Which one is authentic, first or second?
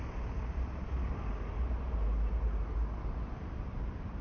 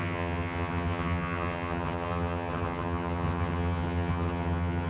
first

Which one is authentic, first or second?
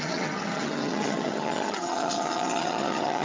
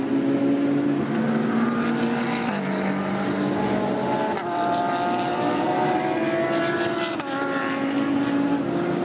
second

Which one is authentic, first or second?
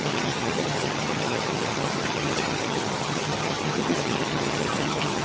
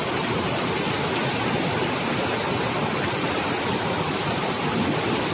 second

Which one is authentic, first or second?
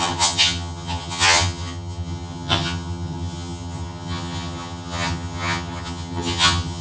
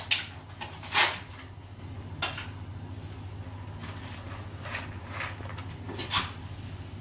second